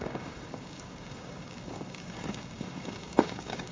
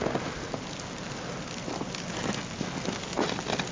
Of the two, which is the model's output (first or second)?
first